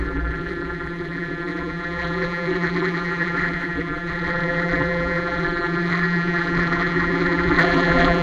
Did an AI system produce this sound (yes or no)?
yes